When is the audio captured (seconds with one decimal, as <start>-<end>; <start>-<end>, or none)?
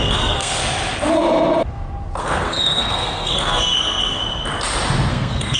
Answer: 0.6-2.2; 4.2-5.1